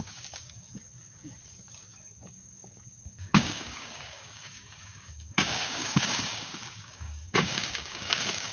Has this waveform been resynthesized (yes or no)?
yes